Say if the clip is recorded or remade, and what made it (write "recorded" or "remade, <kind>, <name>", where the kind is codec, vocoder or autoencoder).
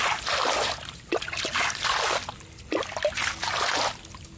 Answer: recorded